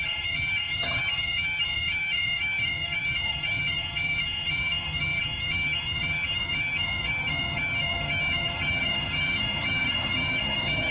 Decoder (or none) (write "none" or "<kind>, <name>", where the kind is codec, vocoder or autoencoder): vocoder, HiFi-GAN